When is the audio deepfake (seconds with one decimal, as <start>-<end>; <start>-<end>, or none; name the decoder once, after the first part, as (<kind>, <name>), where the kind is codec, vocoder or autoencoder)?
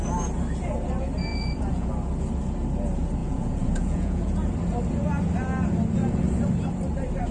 1.3-1.9 (vocoder, Vocos); 3.2-4.5